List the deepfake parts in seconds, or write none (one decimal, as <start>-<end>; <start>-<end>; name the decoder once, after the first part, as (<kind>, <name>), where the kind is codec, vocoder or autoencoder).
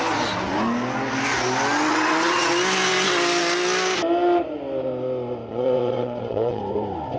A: 1.9-2.5 (vocoder, WaveNeXt); 5.5-6.6